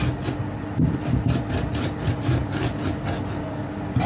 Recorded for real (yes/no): yes